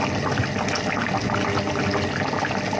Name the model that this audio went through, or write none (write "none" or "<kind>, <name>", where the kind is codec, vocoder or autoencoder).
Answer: none